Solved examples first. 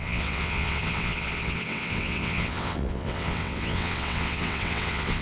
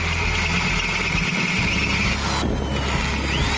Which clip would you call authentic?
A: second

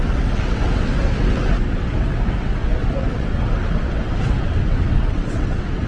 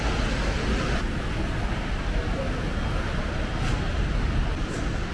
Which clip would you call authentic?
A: second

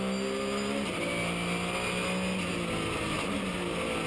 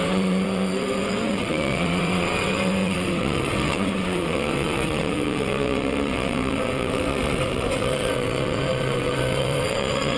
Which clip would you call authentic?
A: first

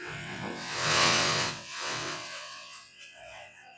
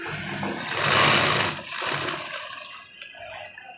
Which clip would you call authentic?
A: second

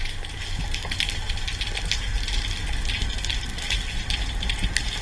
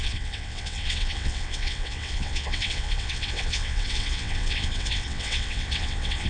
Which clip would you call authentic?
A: first